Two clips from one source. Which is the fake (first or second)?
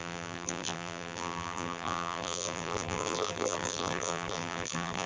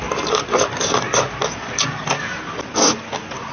first